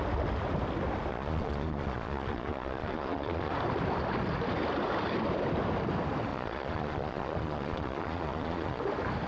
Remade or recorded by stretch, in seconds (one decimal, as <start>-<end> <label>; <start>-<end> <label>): 0.0-1.1 recorded; 1.1-3.5 remade; 3.5-6.3 recorded; 6.3-8.8 remade; 8.8-9.3 recorded